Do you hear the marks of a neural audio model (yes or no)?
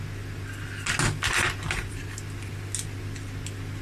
no